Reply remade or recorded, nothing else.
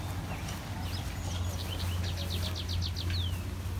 recorded